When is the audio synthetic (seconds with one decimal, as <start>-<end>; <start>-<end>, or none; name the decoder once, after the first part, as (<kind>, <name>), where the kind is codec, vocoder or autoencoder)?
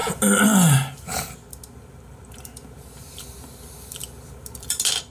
none